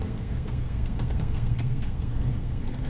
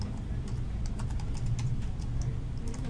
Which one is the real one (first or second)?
second